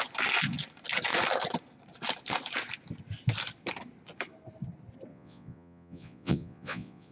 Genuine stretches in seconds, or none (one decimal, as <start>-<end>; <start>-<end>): 0.0-5.1